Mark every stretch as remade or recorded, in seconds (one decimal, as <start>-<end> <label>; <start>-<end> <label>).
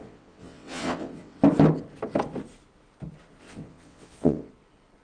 0.0-1.4 remade; 1.4-3.4 recorded; 3.4-4.5 remade; 4.5-5.0 recorded